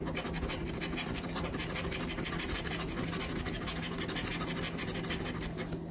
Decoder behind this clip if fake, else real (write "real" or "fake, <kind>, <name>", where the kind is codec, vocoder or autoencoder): real